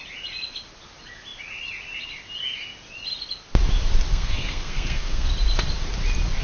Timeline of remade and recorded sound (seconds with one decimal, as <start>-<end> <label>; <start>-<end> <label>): 0.0-4.1 recorded; 4.1-5.3 remade; 5.3-6.4 recorded